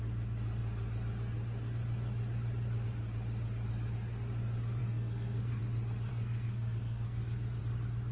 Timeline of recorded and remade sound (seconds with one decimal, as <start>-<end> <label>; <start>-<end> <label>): 0.0-4.8 recorded; 4.8-5.6 remade; 5.6-6.1 recorded; 6.1-7.6 remade; 7.6-8.1 recorded